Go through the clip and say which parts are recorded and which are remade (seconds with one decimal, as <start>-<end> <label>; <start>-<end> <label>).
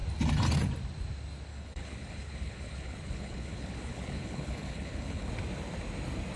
0.0-1.5 recorded; 1.5-5.3 remade; 5.3-6.4 recorded